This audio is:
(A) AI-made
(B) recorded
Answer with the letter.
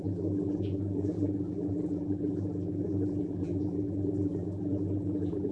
A